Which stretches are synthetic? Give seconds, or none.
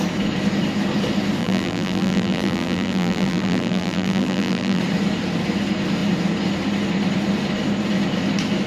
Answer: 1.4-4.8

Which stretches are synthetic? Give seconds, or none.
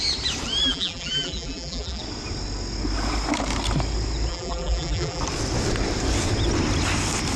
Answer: 0.6-2.0; 4.3-5.2